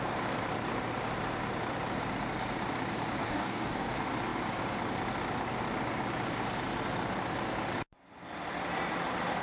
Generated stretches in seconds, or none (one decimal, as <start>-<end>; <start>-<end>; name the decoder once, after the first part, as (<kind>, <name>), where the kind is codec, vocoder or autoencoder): 3.2-3.9 (codec, DAC)